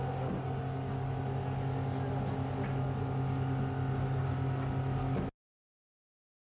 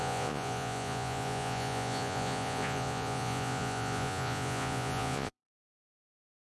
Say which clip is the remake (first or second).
second